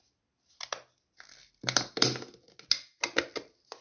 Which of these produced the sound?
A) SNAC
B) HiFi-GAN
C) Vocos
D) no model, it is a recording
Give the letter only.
D